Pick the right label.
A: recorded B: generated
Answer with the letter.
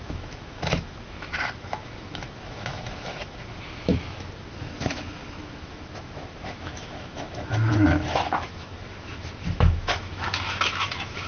B